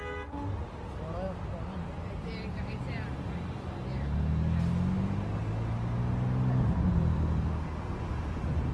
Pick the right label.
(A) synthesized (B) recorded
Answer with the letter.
B